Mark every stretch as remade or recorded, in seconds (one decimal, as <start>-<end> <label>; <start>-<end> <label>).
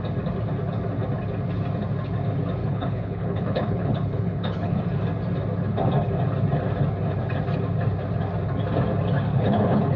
0.0-2.6 recorded; 2.6-4.8 remade; 4.8-9.3 recorded; 9.3-10.0 remade